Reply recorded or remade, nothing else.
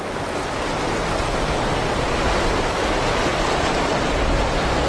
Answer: recorded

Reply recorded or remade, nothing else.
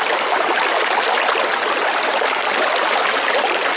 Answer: recorded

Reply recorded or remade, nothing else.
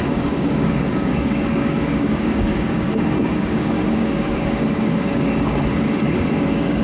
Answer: remade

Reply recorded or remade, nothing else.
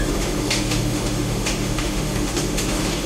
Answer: remade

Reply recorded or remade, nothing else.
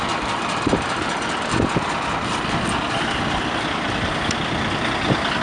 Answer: recorded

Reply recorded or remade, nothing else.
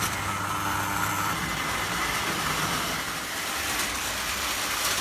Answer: recorded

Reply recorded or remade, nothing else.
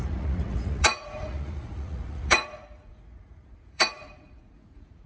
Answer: remade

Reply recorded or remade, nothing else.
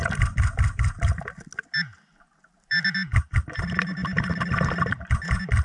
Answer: recorded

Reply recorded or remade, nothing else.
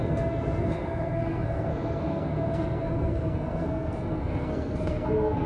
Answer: remade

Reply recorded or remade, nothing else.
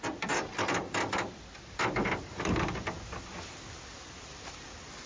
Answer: recorded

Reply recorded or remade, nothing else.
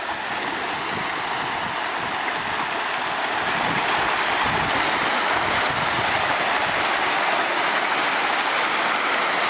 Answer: recorded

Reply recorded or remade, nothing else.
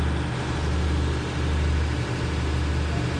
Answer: recorded